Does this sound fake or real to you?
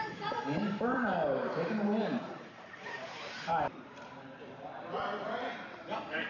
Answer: fake